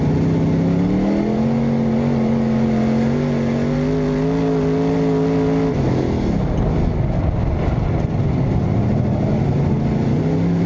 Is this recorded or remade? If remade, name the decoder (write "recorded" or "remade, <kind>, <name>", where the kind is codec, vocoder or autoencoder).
recorded